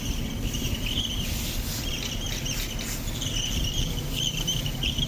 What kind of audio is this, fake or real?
real